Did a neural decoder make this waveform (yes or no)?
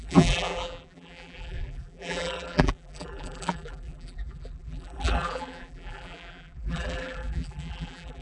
yes